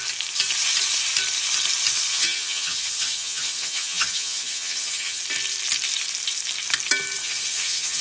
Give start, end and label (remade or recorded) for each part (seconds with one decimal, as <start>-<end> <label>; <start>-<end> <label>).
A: 0.0-2.1 recorded; 2.1-5.2 remade; 5.2-7.2 recorded; 7.2-8.0 remade